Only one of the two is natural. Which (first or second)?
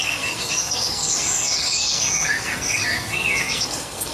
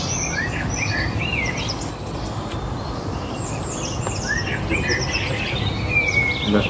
second